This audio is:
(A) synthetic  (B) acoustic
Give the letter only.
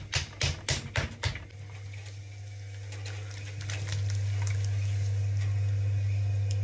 B